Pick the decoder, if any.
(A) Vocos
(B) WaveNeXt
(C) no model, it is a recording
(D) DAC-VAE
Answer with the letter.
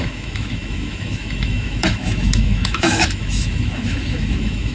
D